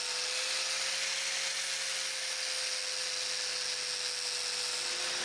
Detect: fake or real real